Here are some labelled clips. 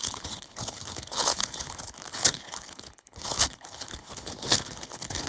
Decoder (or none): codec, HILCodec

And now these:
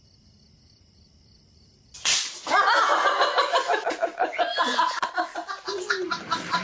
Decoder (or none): none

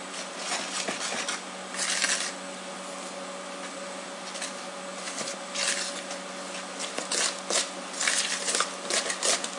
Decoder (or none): none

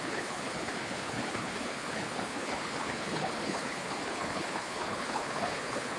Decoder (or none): codec, HILCodec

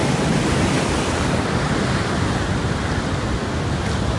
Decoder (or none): none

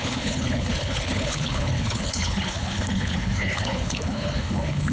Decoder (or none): codec, HILCodec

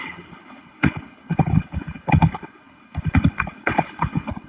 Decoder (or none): codec, HILCodec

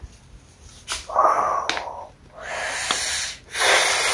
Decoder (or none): none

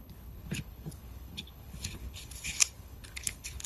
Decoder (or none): codec, HILCodec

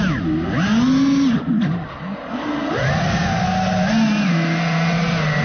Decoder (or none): none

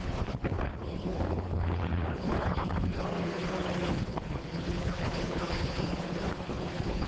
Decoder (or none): codec, HILCodec